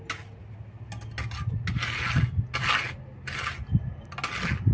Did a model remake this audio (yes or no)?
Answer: no